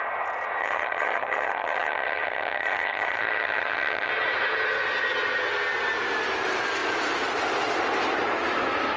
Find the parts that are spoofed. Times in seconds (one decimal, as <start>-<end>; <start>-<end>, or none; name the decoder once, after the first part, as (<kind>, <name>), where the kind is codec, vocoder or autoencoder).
0.6-4.1 (vocoder, HiFi-GAN)